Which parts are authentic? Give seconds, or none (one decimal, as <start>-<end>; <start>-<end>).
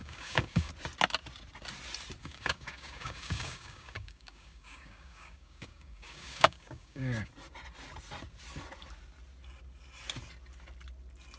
0.7-2.2; 7.3-11.4